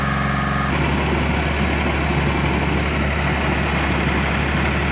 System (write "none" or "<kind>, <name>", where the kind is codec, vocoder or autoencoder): none